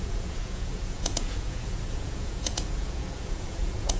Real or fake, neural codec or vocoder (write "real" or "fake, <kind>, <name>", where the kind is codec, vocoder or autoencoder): fake, vocoder, Vocos